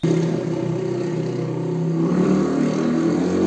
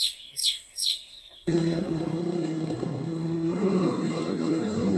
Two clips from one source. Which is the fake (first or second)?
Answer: second